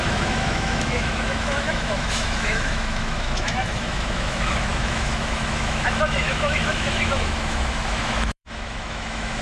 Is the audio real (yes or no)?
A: no